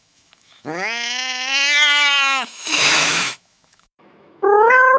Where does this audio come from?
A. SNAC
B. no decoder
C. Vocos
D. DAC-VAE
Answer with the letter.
D